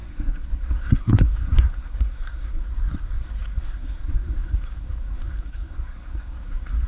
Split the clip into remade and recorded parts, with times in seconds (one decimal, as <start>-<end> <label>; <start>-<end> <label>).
0.0-6.9 remade